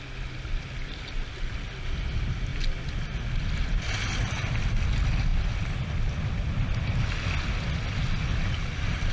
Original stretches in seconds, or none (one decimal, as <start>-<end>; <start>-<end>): 0.0-9.1